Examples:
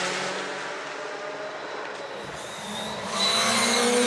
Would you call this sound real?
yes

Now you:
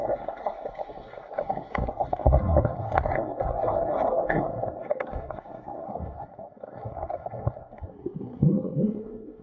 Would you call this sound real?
no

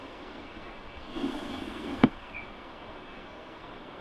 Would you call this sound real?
no